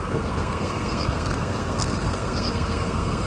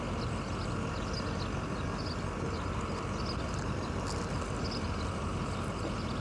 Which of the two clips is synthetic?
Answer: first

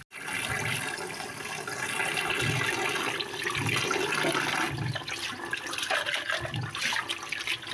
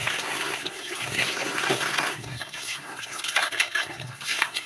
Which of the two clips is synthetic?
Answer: second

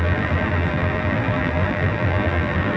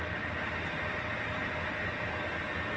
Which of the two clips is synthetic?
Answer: first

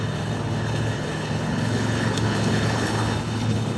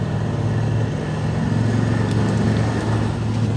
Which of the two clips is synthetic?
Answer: first